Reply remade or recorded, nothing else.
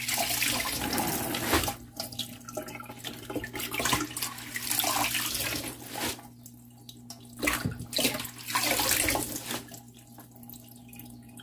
recorded